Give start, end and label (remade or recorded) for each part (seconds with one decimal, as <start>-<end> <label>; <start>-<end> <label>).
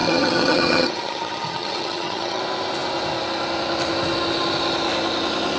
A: 0.0-2.4 remade; 2.4-5.6 recorded